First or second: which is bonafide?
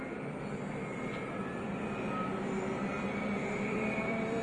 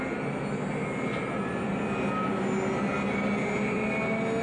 second